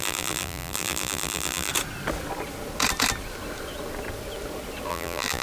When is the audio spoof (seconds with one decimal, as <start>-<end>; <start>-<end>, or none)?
0.0-1.7; 4.9-5.4